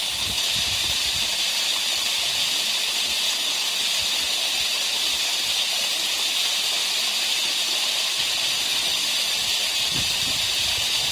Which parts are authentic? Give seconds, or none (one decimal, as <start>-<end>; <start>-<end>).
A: 1.7-3.8

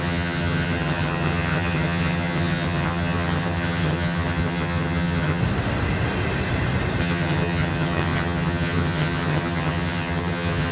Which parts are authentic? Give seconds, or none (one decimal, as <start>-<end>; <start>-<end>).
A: 5.4-7.0

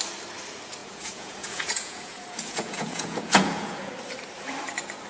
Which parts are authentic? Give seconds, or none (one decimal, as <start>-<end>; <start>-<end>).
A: 0.0-0.8; 3.9-5.1

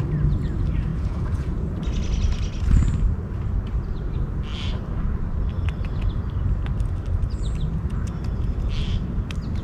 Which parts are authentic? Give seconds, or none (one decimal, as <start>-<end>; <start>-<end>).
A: 0.0-0.9; 1.7-9.6

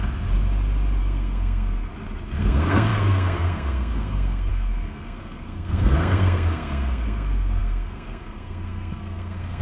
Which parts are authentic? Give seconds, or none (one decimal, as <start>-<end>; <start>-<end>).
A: 0.0-1.0; 1.9-2.4

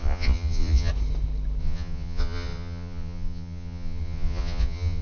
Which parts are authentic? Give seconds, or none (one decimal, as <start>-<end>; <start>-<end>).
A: 0.9-1.6